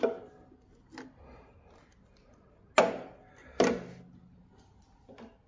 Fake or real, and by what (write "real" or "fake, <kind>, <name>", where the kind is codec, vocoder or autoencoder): real